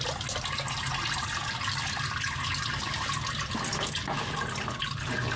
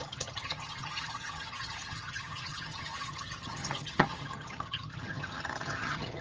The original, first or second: first